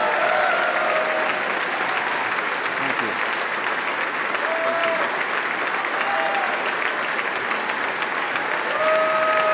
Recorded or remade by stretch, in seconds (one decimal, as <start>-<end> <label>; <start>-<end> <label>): 0.0-9.5 recorded